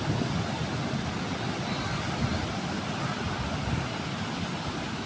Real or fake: real